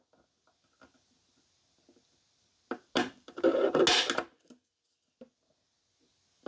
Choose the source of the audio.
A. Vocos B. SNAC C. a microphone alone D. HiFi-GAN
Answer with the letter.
C